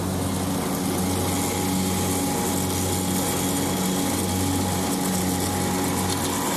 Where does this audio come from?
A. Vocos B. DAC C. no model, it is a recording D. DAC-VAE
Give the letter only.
C